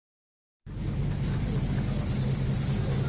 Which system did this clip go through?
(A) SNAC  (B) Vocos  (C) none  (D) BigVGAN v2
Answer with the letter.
C